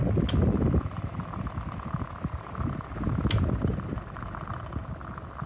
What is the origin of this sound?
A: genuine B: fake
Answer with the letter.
A